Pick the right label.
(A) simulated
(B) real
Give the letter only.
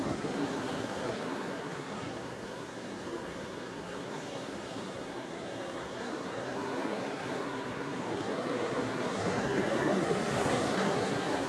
A